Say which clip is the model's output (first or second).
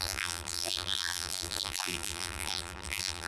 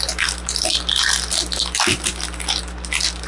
first